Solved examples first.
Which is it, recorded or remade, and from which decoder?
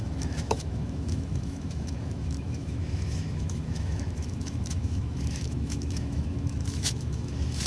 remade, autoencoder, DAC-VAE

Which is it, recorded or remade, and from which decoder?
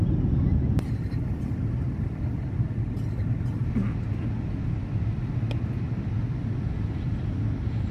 recorded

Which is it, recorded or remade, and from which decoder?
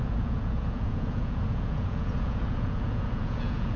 remade, vocoder, Vocos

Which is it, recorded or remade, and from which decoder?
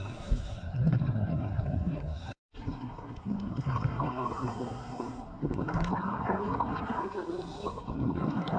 remade, codec, SNAC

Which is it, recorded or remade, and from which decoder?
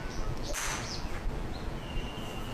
remade, vocoder, BigVGAN v2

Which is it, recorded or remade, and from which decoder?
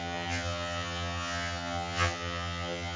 remade, vocoder, HiFi-GAN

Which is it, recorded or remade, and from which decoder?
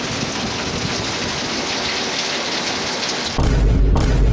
recorded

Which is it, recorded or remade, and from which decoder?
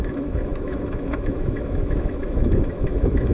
remade, autoencoder, DAC-VAE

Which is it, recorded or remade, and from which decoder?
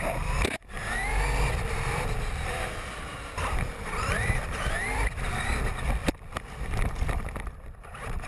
remade, vocoder, BigVGAN v2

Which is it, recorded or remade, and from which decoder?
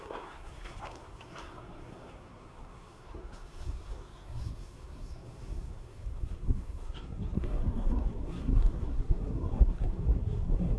remade, codec, SNAC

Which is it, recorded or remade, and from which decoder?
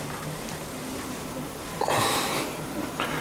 remade, vocoder, BigVGAN v2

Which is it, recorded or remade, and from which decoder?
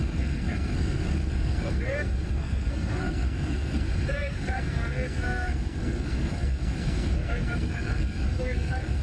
remade, codec, SNAC